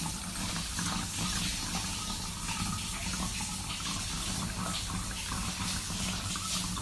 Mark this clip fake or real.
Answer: real